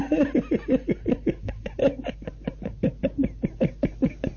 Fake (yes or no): no